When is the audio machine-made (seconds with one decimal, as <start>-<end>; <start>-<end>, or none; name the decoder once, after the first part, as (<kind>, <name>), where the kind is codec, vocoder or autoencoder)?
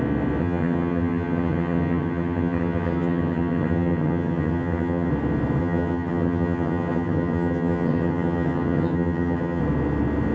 0.4-5.1 (vocoder, HiFi-GAN); 5.6-9.6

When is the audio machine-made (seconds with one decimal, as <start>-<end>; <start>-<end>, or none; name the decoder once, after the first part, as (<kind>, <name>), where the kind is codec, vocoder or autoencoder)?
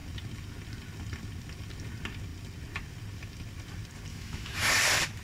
4.1-4.7 (autoencoder, DAC-VAE)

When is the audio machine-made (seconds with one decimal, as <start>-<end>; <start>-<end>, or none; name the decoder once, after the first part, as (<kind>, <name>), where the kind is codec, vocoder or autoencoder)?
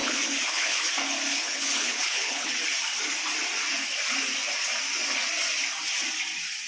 0.0-0.9 (codec, HILCodec); 1.3-2.5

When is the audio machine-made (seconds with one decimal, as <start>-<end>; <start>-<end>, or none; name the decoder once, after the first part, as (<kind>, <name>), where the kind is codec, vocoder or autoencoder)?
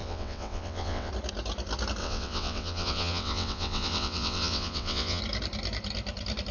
0.0-1.1 (vocoder, WaveNeXt); 2.0-5.2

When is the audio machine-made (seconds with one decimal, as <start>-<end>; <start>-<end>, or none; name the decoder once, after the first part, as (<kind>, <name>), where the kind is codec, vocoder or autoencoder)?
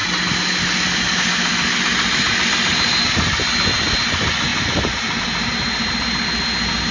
none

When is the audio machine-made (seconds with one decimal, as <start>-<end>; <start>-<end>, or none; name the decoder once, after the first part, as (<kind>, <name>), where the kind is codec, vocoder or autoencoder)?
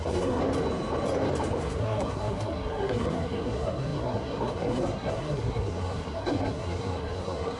0.0-0.4 (codec, SNAC); 1.6-7.6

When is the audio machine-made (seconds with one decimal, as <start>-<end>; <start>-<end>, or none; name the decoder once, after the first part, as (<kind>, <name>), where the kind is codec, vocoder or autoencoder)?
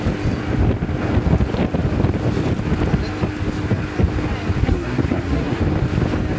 4.6-5.6 (codec, SNAC)